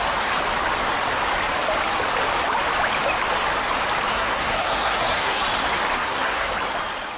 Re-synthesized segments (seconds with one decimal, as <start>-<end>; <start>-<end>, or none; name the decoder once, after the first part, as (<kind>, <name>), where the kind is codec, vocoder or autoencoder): 4.1-5.4 (codec, SNAC); 6.0-6.5